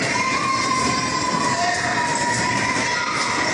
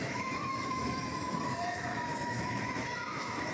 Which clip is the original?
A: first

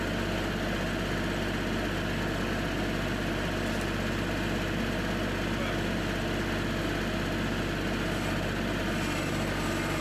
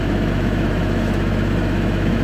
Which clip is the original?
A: first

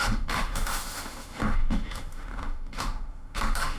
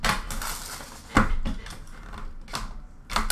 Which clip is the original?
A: second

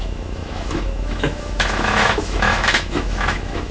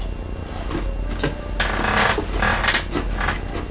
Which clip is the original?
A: second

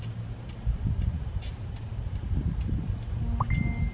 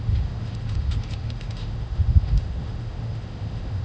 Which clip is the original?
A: first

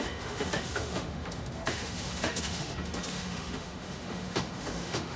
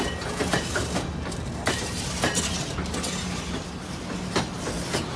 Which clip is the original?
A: second